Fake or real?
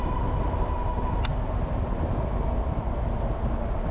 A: real